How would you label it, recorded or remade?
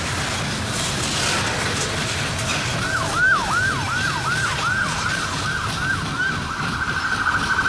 recorded